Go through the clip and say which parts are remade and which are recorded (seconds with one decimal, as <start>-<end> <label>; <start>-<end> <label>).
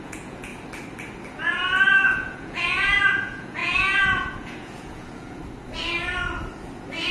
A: 0.0-0.5 remade; 0.5-1.3 recorded; 1.3-5.4 remade; 5.4-7.1 recorded